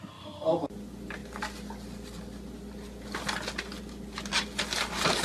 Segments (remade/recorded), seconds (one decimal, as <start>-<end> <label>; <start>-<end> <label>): 0.0-5.2 recorded